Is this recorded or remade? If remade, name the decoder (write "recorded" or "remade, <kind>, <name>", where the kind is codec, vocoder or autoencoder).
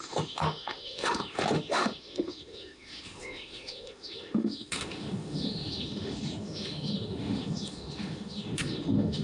remade, autoencoder, DAC-VAE